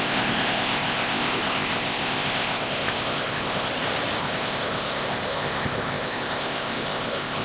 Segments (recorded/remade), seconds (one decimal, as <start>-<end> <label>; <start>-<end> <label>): 0.0-3.7 remade; 3.7-4.2 recorded; 4.2-7.4 remade